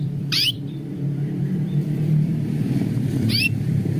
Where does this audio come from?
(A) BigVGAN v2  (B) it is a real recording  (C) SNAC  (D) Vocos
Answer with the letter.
A